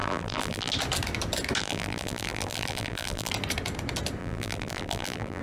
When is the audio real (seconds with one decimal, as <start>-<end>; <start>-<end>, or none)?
0.7-1.6; 3.3-4.2